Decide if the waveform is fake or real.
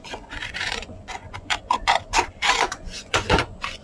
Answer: fake